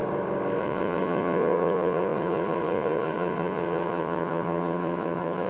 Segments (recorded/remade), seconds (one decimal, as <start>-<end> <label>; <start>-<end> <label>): 0.0-0.6 recorded; 0.6-5.5 remade